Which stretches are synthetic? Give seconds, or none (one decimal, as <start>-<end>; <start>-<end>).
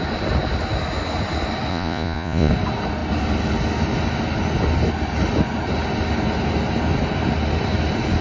1.7-2.5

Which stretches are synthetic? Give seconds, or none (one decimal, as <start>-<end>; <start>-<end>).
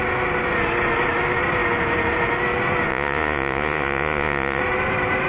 2.9-4.6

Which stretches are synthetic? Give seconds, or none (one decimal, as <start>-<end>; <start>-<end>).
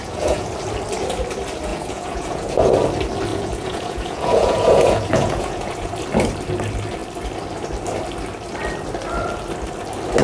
0.0-0.5; 1.7-2.7; 3.3-5.9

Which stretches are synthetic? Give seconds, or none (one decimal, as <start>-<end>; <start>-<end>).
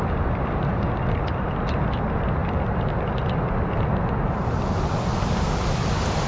none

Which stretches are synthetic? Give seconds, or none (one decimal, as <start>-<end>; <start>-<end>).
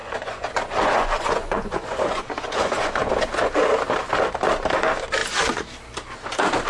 0.0-3.1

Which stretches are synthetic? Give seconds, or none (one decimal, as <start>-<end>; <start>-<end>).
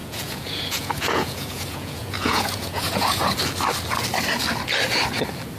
0.0-3.4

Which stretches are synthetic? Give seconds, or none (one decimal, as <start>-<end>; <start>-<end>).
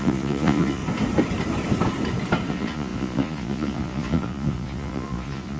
0.0-0.8; 2.5-5.6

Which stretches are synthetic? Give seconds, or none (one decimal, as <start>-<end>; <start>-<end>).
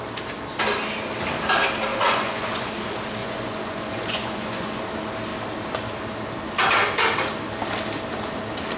1.9-2.7; 3.2-4.8